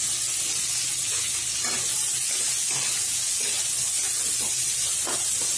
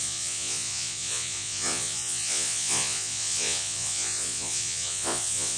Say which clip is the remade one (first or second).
second